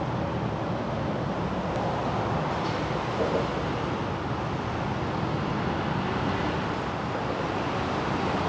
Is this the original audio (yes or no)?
yes